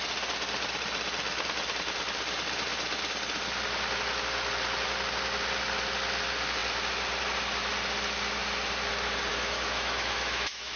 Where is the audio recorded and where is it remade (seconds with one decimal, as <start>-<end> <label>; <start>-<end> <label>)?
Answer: 0.0-9.3 recorded; 9.3-10.8 remade